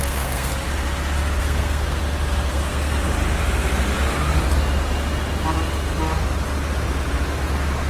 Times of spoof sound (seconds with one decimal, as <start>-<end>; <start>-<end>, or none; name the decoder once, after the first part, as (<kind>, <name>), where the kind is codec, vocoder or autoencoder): 0.0-0.5 (codec, SNAC); 1.4-2.0; 2.5-3.0